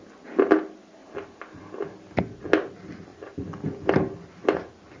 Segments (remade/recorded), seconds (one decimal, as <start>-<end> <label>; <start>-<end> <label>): 0.0-3.1 recorded; 3.1-3.9 remade; 3.9-5.0 recorded